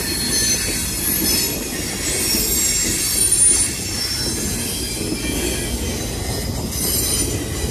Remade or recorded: recorded